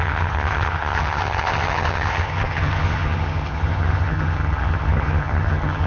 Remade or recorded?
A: remade